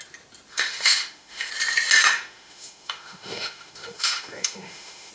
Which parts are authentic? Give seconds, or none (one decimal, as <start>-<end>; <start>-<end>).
0.0-0.5; 1.5-2.0